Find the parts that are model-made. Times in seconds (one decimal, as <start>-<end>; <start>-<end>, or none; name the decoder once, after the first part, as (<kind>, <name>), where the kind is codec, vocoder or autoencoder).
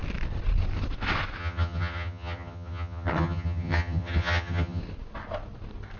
1.4-4.8 (vocoder, HiFi-GAN)